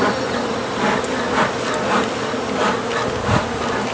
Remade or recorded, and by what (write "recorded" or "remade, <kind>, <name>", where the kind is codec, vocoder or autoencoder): recorded